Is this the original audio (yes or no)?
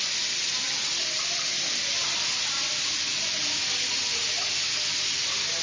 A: yes